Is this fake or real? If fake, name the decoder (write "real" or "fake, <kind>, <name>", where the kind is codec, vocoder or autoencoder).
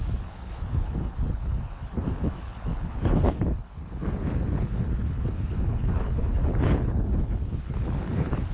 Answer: fake, codec, HILCodec